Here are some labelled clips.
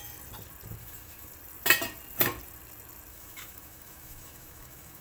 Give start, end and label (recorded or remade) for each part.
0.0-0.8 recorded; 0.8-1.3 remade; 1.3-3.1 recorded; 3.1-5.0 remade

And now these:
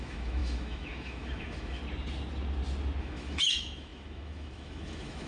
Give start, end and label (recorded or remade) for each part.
0.0-1.8 remade; 1.8-3.0 recorded; 3.0-5.3 remade